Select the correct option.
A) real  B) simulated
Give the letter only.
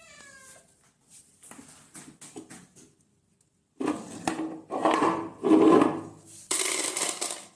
A